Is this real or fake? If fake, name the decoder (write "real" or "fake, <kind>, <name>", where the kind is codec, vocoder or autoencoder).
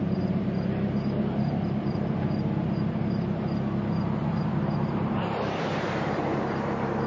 fake, vocoder, BigVGAN v2